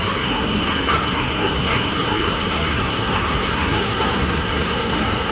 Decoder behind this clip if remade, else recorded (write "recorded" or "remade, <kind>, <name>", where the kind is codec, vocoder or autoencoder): remade, codec, SNAC